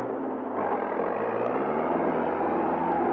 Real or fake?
real